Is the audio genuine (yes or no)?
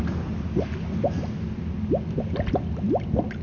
yes